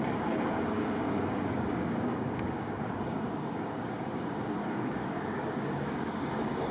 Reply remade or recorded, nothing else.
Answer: remade